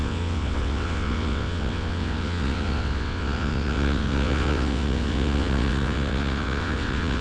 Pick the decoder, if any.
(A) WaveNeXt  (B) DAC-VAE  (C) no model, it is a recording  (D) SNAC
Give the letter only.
A